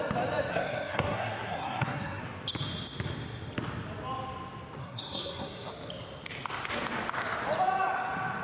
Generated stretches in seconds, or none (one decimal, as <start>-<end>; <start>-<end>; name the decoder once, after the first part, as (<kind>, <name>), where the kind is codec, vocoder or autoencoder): 0.5-2.2 (codec, SNAC); 4.8-5.7